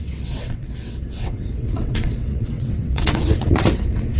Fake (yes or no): yes